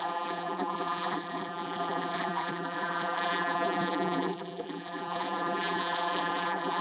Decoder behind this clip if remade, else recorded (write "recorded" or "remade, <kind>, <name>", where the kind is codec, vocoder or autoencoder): remade, vocoder, BigVGAN v2